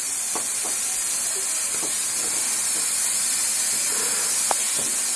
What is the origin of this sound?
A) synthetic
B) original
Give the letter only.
B